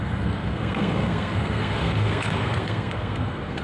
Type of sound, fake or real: fake